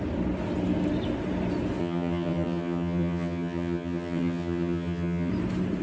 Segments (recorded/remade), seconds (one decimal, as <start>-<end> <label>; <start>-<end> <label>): 0.0-1.8 recorded; 1.8-5.3 remade; 5.3-5.8 recorded